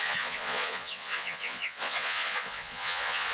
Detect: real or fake fake